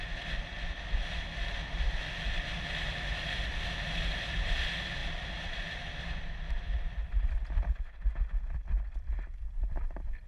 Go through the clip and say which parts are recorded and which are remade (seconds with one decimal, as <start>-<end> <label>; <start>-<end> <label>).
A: 0.0-5.0 recorded; 5.0-10.3 remade